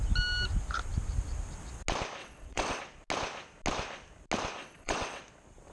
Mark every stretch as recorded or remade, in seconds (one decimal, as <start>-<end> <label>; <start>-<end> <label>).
0.0-2.2 recorded; 2.2-2.8 remade; 2.8-4.6 recorded; 4.6-5.2 remade; 5.2-5.7 recorded